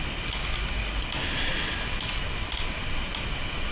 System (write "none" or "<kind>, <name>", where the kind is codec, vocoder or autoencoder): none